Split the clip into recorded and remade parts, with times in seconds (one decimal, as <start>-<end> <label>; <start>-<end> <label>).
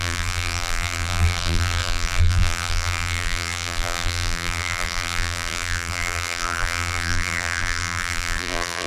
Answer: 0.0-8.9 remade